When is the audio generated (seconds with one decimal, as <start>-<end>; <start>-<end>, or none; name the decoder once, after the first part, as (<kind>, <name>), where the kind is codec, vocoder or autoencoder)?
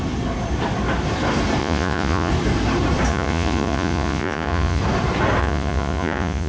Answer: 1.6-2.3 (vocoder, Vocos); 3.1-4.8; 5.4-6.5